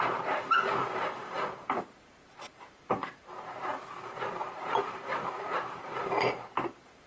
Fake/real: fake